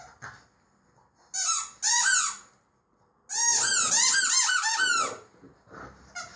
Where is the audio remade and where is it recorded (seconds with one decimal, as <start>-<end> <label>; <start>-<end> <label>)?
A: 0.0-6.4 recorded